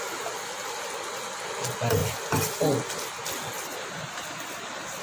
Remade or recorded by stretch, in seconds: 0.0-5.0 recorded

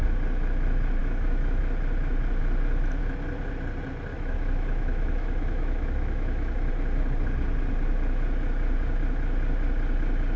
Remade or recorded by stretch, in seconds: 0.0-1.0 recorded; 1.0-1.6 remade; 1.6-4.1 recorded; 4.1-6.7 remade; 6.7-10.4 recorded

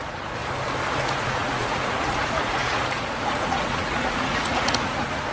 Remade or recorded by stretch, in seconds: 0.0-0.4 remade; 0.4-1.0 recorded; 1.0-5.3 remade